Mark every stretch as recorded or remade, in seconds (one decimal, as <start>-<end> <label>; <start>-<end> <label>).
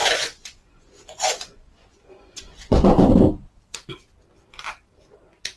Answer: 0.0-3.1 remade; 3.1-5.6 recorded